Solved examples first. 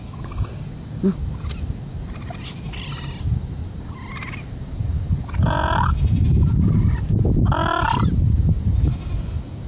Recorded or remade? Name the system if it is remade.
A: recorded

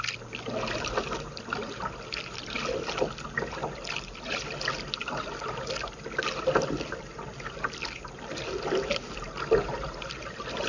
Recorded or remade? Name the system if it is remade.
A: recorded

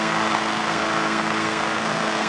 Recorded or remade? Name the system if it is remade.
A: remade, codec, SNAC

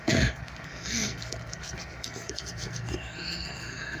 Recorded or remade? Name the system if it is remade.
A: remade, codec, SNAC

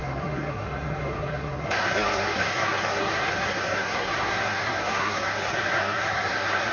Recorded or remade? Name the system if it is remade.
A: remade, codec, SNAC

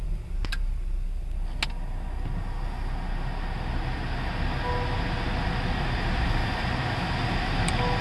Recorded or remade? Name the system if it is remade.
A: recorded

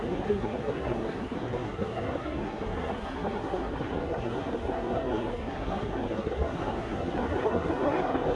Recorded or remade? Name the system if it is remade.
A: remade, codec, SNAC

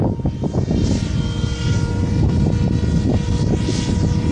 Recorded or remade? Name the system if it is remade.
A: recorded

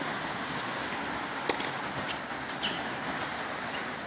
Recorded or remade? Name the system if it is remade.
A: recorded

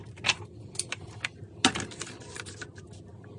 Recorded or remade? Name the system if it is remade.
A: recorded